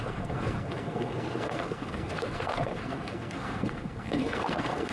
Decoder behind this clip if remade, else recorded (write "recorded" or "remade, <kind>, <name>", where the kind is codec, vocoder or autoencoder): remade, codec, SNAC